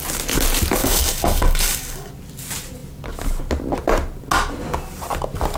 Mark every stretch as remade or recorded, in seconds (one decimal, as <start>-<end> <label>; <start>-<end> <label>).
0.0-0.8 recorded; 0.8-2.1 remade; 2.1-5.6 recorded

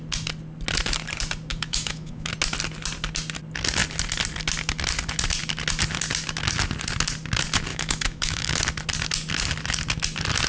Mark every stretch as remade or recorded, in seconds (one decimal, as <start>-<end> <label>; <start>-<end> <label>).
0.0-1.5 recorded; 1.5-2.3 remade; 2.3-7.7 recorded; 7.7-8.6 remade; 8.6-10.5 recorded